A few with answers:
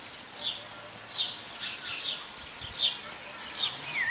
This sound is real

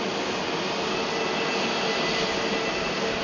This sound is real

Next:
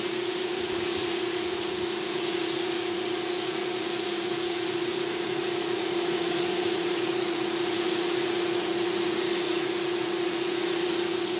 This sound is fake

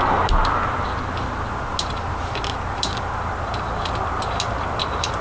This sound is real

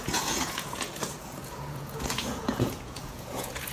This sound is fake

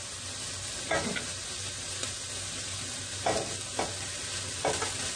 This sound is real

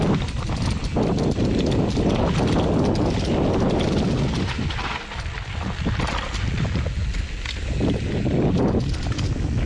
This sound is real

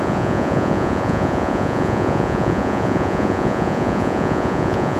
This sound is fake